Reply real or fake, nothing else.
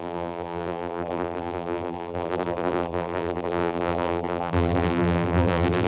fake